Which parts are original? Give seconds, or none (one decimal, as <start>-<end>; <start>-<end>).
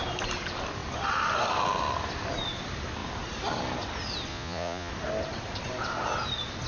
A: 0.0-4.3; 4.9-6.7